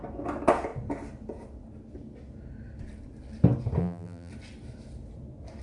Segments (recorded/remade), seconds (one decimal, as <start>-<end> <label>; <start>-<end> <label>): 0.0-3.8 recorded; 3.8-4.3 remade; 4.3-5.6 recorded